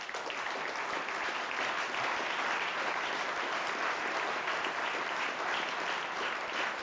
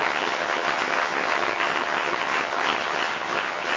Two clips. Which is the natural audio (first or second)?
first